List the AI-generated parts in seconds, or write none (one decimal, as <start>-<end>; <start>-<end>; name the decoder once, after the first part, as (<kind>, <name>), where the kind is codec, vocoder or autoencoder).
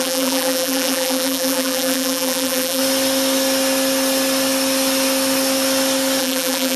0.0-2.8 (vocoder, BigVGAN v2); 6.2-6.8